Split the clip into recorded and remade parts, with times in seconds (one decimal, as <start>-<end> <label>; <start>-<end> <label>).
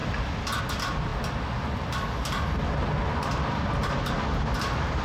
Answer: 0.0-5.0 recorded